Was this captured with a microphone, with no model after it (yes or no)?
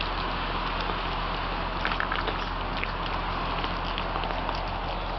yes